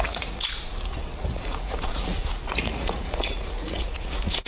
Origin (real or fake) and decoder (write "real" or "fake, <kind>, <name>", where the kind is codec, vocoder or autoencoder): fake, vocoder, Vocos